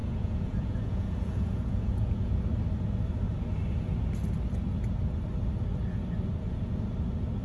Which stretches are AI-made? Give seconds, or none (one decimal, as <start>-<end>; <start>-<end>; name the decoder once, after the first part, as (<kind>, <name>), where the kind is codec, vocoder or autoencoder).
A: 0.0-2.3 (vocoder, Vocos)